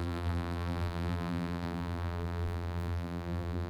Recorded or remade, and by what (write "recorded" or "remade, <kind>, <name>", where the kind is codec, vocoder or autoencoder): remade, vocoder, BigVGAN v2